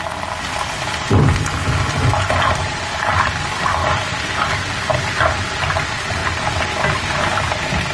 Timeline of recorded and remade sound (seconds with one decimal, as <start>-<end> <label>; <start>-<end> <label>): 0.0-7.9 recorded